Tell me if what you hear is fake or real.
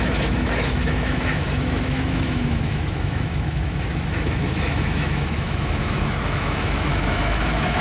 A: fake